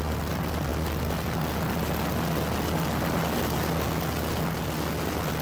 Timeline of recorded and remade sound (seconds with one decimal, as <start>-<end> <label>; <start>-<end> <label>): 0.0-5.4 recorded

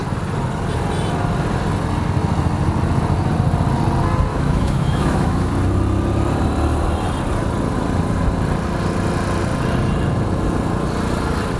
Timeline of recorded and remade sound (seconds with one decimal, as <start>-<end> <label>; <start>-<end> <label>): 0.0-4.3 recorded; 4.3-5.5 remade; 5.5-11.6 recorded

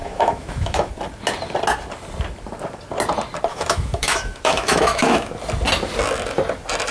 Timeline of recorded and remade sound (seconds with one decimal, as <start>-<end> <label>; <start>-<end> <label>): 0.0-0.9 remade; 0.9-3.5 recorded; 3.5-5.3 remade; 5.3-6.9 recorded

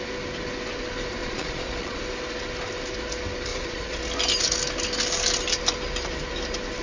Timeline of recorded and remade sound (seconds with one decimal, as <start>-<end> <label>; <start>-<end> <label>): 0.0-1.2 recorded; 1.2-2.0 remade; 2.0-3.5 recorded; 3.5-4.0 remade; 4.0-6.8 recorded

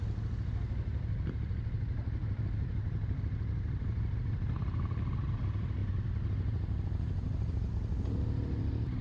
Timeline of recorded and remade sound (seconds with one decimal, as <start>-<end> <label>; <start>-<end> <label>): 0.0-0.9 recorded; 0.9-4.3 remade; 4.3-5.8 recorded; 5.8-7.7 remade; 7.7-9.0 recorded

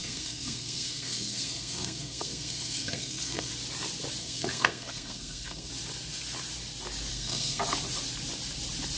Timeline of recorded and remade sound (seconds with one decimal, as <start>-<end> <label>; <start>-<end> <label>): 0.0-3.5 remade; 3.5-4.2 recorded; 4.2-5.7 remade; 5.7-7.1 recorded; 7.1-7.6 remade; 7.6-9.0 recorded

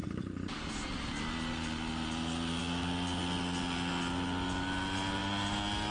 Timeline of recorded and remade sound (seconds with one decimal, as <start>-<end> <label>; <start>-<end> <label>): 0.0-0.7 remade; 0.7-5.9 recorded

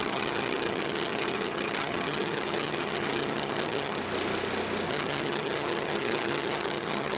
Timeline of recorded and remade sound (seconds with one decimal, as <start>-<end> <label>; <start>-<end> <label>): 0.0-4.0 remade; 4.0-4.9 recorded; 4.9-7.2 remade